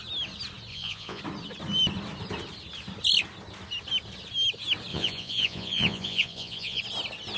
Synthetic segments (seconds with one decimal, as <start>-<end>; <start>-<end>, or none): 0.7-1.2; 4.9-6.8